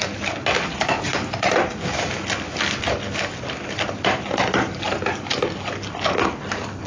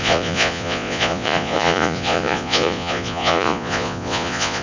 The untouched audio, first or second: first